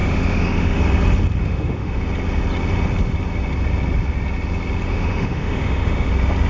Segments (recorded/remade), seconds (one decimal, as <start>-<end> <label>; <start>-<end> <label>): 0.0-0.8 remade; 0.8-1.4 recorded; 1.4-2.0 remade; 2.0-4.9 recorded; 4.9-6.1 remade; 6.1-6.5 recorded